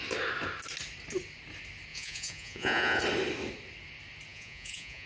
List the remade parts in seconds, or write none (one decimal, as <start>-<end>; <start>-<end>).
1.9-3.0; 4.3-5.1